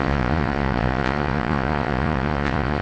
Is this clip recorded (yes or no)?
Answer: no